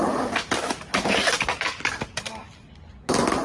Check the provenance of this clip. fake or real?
real